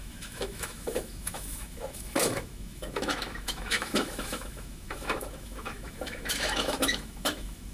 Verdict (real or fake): fake